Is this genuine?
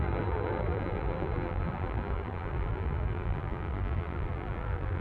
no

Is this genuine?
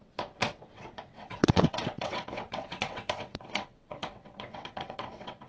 no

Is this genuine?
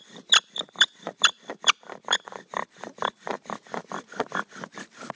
yes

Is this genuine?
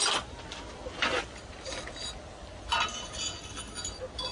yes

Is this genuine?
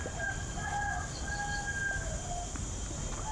yes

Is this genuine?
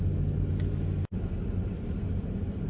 yes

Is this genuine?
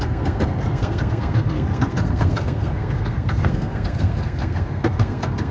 no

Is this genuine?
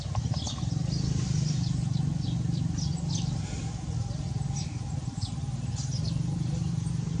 yes